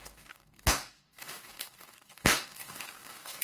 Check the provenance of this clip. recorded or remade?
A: remade